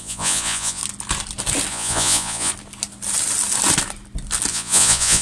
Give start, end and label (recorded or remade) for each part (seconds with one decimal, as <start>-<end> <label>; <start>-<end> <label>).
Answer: 0.0-0.8 remade; 0.8-1.7 recorded; 1.7-2.5 remade; 2.5-4.5 recorded; 4.5-5.2 remade